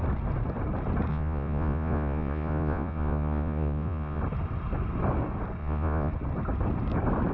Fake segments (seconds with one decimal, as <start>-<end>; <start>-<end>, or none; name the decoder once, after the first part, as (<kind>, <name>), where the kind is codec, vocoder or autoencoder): 1.1-4.2 (vocoder, Vocos); 5.6-6.1